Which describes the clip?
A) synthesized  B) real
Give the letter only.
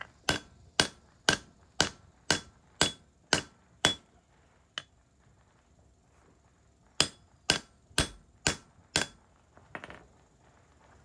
B